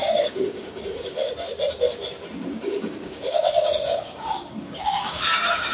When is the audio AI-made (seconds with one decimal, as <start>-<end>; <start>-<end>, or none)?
0.0-1.5; 2.6-5.7